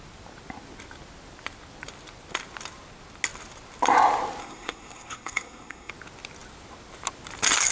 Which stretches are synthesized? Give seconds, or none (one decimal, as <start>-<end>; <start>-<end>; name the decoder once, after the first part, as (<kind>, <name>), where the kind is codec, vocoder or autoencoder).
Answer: 4.4-5.9 (codec, SNAC)